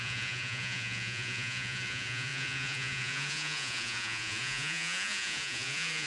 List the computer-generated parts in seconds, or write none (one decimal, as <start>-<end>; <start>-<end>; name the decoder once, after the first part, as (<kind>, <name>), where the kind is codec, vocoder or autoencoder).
0.0-6.1 (vocoder, Vocos)